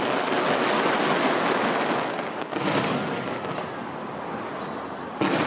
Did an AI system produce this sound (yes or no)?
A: no